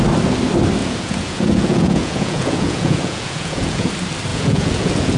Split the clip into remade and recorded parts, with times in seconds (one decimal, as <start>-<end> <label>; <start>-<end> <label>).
0.0-0.8 recorded; 0.8-3.9 remade; 3.9-4.3 recorded; 4.3-5.2 remade